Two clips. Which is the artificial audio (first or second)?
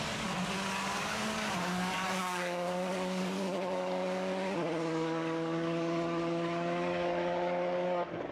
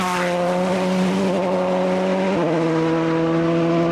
first